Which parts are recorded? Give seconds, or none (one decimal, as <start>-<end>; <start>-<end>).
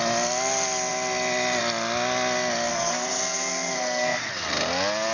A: 0.0-2.7; 4.3-5.1